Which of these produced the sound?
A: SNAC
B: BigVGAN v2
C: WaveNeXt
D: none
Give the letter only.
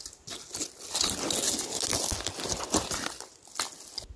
D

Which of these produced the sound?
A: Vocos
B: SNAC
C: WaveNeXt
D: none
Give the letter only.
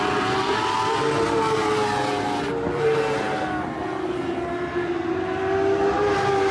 D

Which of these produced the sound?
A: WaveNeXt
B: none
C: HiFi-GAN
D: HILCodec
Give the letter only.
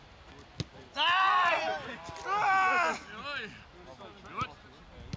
B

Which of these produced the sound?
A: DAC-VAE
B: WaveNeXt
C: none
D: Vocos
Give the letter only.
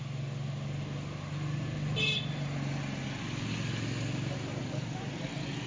C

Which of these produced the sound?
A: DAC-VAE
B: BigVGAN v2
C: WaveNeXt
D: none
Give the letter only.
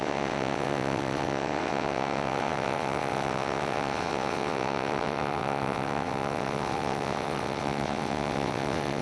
C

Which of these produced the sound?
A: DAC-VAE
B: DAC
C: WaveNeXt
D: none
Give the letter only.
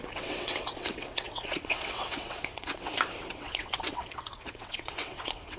C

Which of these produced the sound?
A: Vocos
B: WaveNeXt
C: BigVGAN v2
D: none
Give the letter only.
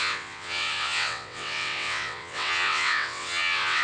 B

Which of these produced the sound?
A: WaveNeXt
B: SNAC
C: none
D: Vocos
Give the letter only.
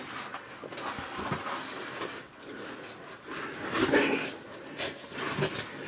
C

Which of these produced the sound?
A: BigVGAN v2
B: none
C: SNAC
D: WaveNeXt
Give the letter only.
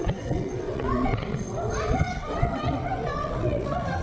D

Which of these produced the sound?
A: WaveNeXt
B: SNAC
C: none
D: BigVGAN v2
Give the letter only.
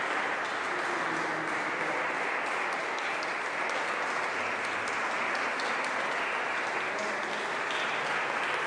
C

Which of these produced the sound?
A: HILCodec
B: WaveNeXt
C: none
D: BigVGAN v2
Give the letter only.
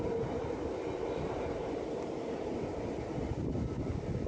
C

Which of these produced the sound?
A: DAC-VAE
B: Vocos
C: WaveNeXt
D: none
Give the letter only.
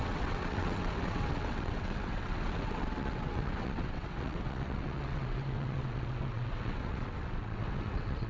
C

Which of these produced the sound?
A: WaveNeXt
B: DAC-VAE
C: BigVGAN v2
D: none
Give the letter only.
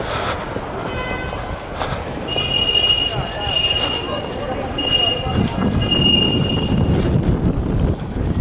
D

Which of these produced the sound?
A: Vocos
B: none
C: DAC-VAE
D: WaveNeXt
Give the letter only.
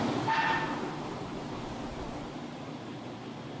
B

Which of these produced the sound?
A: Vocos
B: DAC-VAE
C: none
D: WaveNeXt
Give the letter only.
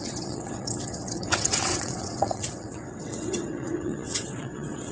D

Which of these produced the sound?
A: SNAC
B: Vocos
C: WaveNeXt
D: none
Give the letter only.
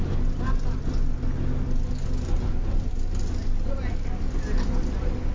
D